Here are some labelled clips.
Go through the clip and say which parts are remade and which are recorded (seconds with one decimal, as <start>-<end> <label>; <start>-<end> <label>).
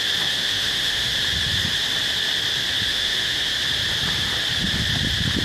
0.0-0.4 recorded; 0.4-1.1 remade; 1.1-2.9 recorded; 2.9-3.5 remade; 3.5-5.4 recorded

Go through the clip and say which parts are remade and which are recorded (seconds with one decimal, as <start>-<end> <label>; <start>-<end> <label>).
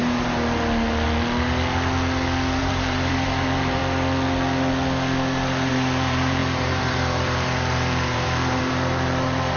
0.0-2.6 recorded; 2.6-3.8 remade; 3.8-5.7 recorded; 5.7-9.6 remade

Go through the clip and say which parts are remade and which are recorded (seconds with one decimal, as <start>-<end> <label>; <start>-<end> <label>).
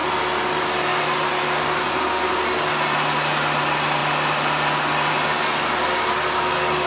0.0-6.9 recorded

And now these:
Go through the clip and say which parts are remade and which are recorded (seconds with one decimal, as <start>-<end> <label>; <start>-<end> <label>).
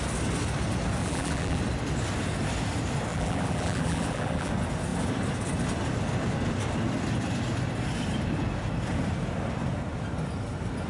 0.0-1.0 recorded; 1.0-1.6 remade; 1.6-3.1 recorded; 3.1-4.5 remade; 4.5-10.9 recorded